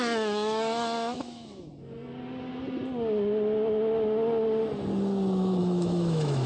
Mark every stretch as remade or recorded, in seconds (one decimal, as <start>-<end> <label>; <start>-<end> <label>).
0.0-1.7 remade; 1.7-5.6 recorded; 5.6-6.5 remade